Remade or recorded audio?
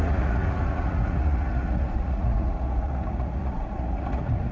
remade